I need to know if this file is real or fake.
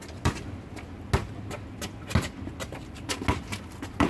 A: real